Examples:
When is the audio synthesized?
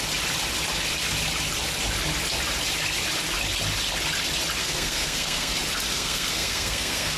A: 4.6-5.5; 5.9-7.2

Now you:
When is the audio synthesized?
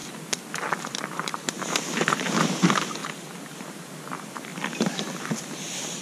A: 0.8-3.0; 3.6-4.5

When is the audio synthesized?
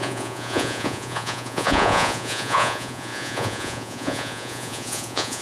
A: 0.0-5.4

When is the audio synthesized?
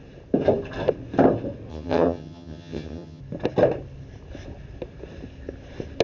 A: 1.7-3.2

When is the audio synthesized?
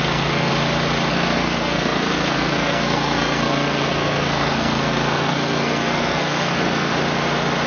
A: 0.0-0.5; 1.1-6.9